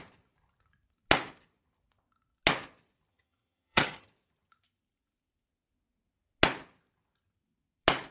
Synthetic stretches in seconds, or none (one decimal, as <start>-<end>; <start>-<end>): 3.1-4.1